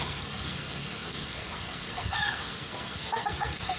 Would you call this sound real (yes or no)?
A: no